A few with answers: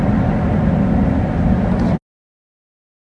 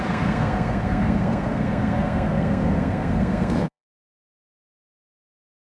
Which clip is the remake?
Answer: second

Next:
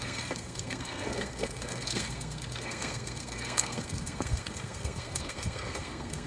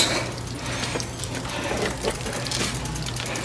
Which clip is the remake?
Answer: first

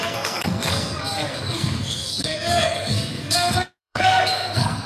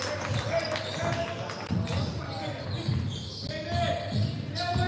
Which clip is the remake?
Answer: first